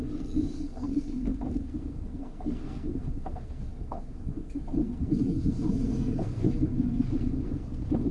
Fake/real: fake